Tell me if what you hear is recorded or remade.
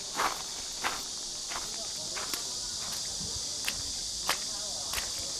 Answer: recorded